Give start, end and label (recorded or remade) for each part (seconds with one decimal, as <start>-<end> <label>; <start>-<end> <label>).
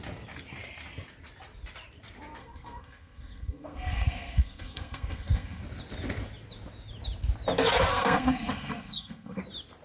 0.0-2.4 recorded; 2.4-5.6 remade; 5.6-7.9 recorded; 7.9-9.4 remade; 9.4-9.8 recorded